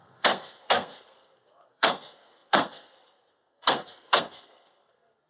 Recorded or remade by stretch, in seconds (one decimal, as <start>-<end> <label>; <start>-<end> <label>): 0.0-5.3 remade